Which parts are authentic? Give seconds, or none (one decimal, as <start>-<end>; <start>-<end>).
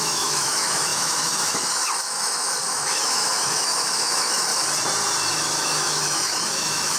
4.5-5.3